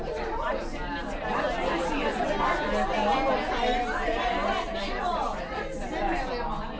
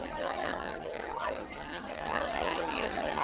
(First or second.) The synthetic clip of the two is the second